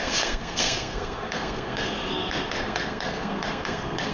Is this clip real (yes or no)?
no